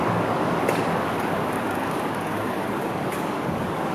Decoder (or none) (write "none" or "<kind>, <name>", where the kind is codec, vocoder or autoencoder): codec, DAC